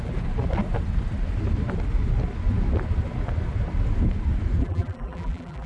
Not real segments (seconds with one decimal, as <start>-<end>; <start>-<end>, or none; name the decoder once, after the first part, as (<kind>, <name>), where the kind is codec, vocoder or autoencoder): 4.6-5.7 (vocoder, BigVGAN v2)